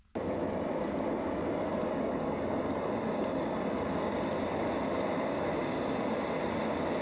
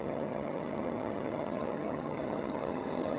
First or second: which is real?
first